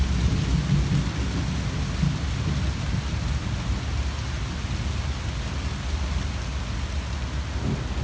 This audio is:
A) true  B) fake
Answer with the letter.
A